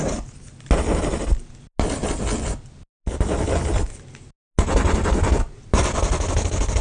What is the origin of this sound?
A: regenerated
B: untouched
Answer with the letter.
B